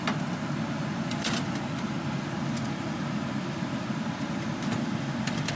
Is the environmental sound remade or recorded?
recorded